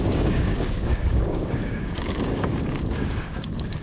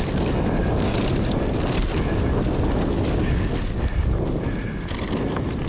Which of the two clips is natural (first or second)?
second